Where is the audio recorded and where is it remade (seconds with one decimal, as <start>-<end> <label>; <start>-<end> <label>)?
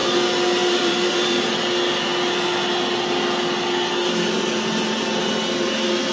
0.0-1.5 remade; 1.5-6.1 recorded